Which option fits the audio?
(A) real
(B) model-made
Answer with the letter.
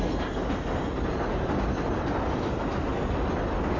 A